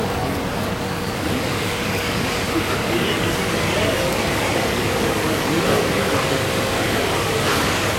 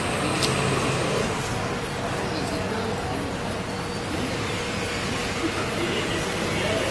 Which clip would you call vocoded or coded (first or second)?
first